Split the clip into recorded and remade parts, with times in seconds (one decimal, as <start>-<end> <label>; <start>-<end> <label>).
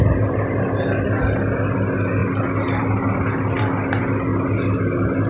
0.0-5.3 recorded